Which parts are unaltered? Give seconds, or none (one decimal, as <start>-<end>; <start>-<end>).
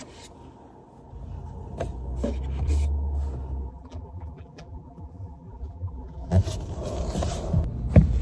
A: 0.0-3.7; 6.3-8.2